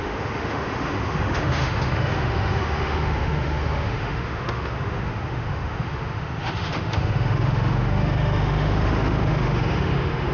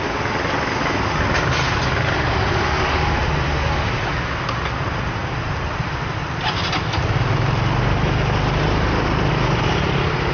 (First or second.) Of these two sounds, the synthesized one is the first